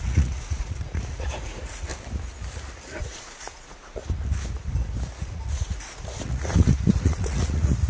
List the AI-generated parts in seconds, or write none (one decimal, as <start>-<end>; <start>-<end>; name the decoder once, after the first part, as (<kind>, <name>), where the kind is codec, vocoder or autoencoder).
0.0-1.9 (vocoder, Vocos); 3.0-4.0; 5.3-7.9